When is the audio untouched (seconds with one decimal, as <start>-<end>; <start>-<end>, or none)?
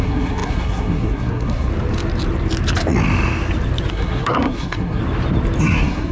1.7-3.9; 5.0-5.6